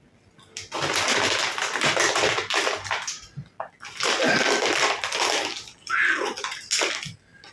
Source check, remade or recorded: recorded